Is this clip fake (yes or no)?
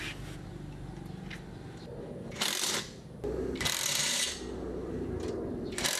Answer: no